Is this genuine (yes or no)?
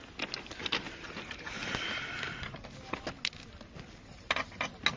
yes